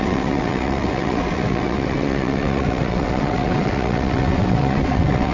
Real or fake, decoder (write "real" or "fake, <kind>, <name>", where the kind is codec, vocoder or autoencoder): fake, vocoder, WaveNeXt